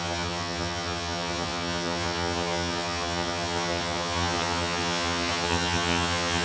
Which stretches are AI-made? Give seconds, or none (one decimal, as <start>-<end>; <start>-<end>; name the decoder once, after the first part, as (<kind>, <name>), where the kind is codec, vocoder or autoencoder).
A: 0.0-6.4 (vocoder, HiFi-GAN)